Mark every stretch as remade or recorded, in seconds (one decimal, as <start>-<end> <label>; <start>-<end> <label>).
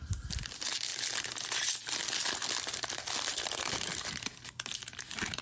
0.0-5.4 recorded